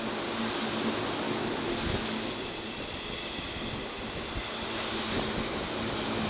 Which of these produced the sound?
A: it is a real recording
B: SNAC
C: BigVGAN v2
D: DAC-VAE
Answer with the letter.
A